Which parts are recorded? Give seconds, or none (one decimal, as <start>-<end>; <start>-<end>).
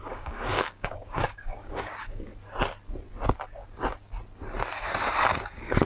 2.3-5.5